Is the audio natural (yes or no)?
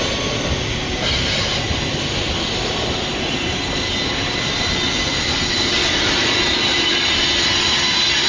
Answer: yes